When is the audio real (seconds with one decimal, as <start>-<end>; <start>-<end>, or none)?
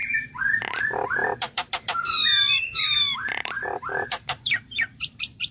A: 0.0-0.7